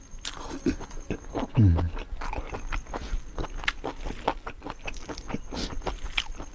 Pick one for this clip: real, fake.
real